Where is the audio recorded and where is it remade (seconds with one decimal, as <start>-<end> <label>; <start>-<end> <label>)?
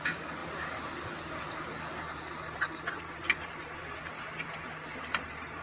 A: 0.0-5.6 recorded